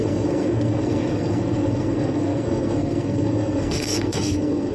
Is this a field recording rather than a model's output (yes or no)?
no